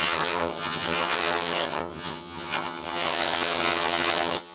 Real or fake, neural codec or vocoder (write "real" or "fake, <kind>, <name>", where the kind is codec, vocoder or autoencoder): fake, vocoder, HiFi-GAN